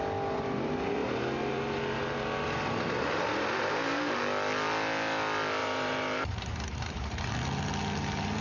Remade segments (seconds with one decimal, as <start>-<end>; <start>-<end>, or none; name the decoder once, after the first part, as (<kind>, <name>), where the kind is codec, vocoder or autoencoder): 1.0-4.2 (vocoder, BigVGAN v2); 5.6-7.2